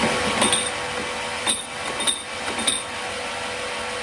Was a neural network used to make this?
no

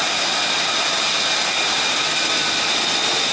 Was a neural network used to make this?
no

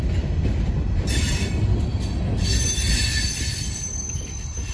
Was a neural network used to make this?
yes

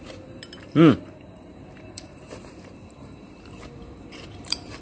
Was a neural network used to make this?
yes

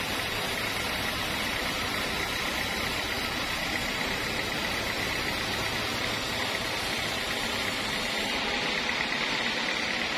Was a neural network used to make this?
no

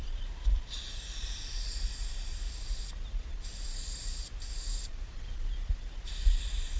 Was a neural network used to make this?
no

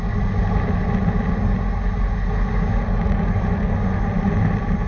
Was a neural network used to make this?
no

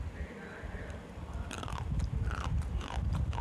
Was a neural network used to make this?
no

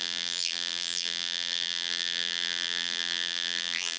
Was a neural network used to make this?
yes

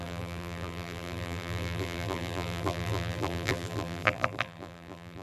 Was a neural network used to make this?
yes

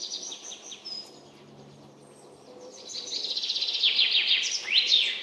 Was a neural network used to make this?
no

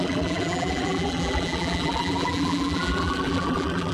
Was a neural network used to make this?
yes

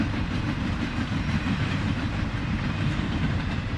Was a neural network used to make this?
yes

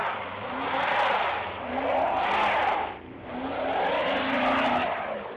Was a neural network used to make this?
no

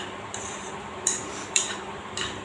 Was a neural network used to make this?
yes